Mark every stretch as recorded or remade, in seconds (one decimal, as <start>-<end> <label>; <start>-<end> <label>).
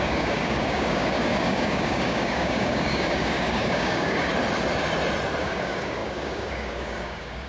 0.0-4.3 remade; 4.3-5.4 recorded; 5.4-7.5 remade